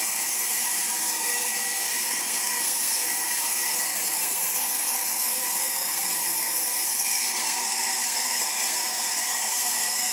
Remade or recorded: remade